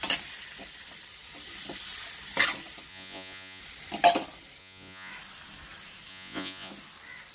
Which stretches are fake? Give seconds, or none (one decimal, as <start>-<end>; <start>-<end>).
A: 2.9-3.6; 4.6-5.1; 6.1-6.7